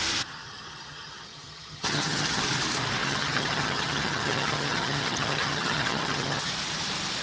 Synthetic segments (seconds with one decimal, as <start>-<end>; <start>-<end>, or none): 0.4-2.4; 3.0-6.5